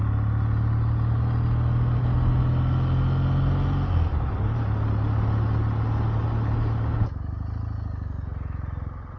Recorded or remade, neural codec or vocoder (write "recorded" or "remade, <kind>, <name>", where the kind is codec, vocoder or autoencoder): recorded